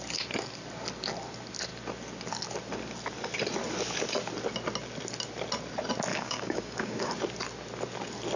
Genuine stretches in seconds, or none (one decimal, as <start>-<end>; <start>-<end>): 0.0-6.1; 7.1-8.4